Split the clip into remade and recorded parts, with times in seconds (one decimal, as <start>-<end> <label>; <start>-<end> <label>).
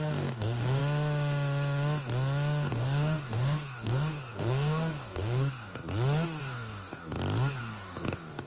0.0-0.8 remade; 0.8-2.7 recorded; 2.7-5.8 remade; 5.8-6.4 recorded; 6.4-7.0 remade; 7.0-7.6 recorded; 7.6-8.5 remade